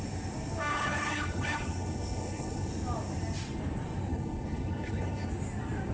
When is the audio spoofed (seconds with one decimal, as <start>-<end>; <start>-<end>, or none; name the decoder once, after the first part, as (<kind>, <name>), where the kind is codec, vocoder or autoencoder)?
0.7-2.7 (codec, HILCodec); 4.1-5.3